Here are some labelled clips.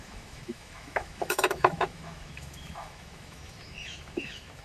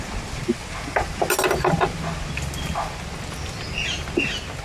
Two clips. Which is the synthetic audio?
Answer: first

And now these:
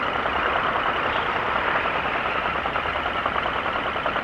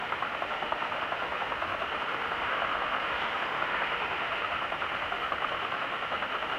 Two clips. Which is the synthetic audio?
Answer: second